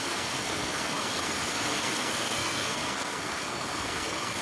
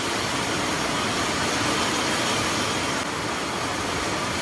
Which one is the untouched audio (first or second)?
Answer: second